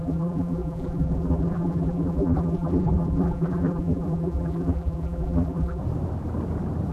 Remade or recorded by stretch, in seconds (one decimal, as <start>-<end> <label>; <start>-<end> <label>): 0.0-5.8 remade; 5.8-6.9 recorded